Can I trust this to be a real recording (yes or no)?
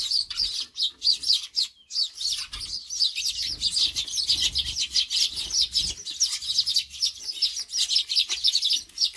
yes